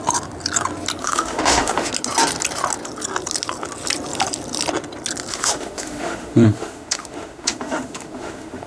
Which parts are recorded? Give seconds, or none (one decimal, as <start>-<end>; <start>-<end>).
0.0-1.0; 1.9-5.3